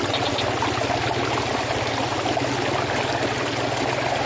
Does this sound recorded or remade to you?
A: recorded